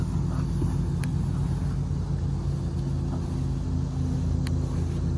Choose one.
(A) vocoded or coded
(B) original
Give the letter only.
B